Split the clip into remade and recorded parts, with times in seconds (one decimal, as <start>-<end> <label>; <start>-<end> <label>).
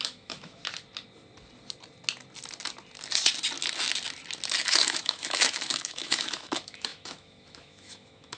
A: 0.0-0.6 remade; 0.6-4.6 recorded; 4.6-8.4 remade